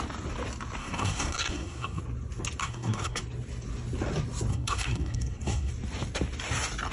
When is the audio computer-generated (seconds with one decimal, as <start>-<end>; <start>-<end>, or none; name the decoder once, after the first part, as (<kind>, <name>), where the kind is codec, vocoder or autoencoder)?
0.8-2.0 (codec, SNAC); 2.6-3.2; 4.5-5.7